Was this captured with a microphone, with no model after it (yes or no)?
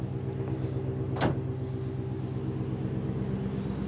yes